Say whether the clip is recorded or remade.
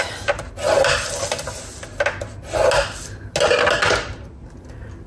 recorded